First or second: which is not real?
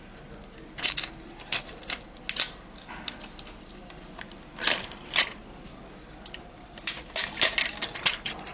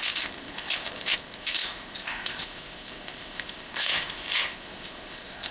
second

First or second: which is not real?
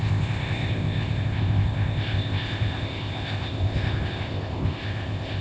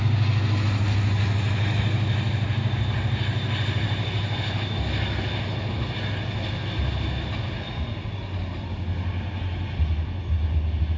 first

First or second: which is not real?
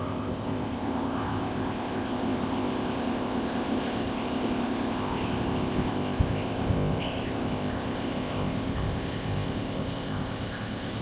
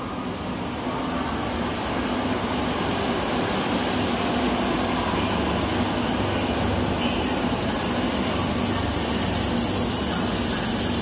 first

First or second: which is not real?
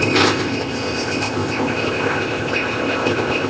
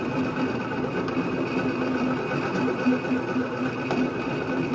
first